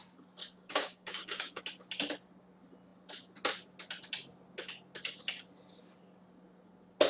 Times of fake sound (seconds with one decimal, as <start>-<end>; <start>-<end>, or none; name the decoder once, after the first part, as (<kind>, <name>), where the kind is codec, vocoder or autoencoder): 0.4-1.6 (codec, DAC)